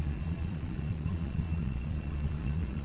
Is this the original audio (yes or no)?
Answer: no